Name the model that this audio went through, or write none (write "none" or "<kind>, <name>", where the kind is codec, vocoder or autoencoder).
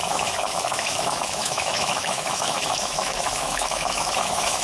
autoencoder, DAC-VAE